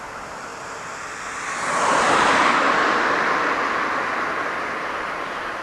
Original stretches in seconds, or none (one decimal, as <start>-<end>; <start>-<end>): 0.0-5.6